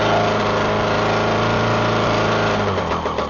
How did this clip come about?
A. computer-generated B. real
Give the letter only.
B